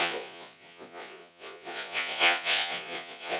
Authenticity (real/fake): fake